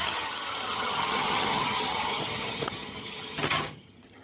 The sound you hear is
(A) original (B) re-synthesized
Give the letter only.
B